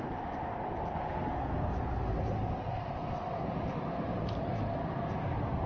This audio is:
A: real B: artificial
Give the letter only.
A